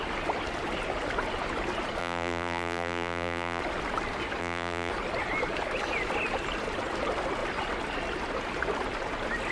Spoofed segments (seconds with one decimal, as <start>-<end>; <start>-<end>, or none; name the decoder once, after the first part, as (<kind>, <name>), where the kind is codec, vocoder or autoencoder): 2.0-3.6 (vocoder, BigVGAN v2); 4.4-4.9